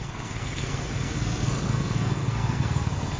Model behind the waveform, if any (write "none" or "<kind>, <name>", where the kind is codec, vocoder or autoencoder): codec, SNAC